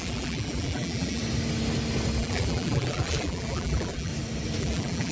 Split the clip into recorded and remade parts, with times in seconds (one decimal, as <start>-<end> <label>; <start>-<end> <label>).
0.0-1.2 remade; 1.2-2.2 recorded; 2.2-4.1 remade; 4.1-4.6 recorded; 4.6-5.1 remade